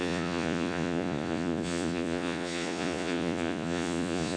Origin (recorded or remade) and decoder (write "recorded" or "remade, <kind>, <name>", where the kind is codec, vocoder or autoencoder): remade, vocoder, Vocos